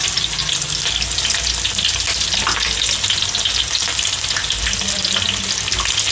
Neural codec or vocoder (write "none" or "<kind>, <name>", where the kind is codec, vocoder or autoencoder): none